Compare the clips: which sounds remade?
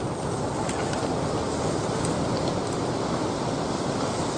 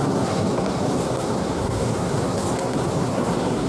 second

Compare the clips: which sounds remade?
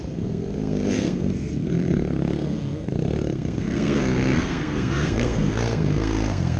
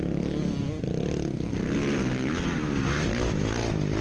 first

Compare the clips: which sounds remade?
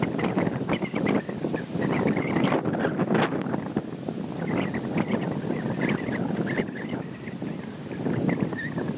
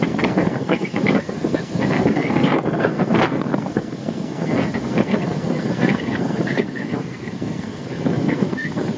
second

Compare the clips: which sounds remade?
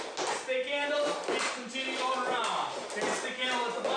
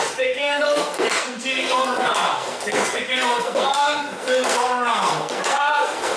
second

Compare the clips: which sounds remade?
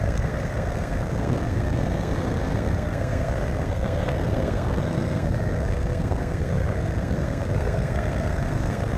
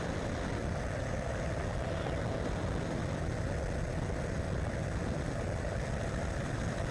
first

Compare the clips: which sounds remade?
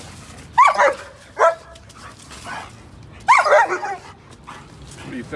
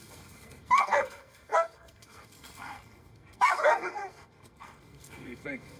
second